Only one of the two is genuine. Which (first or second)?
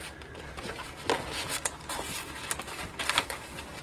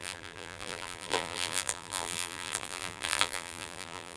first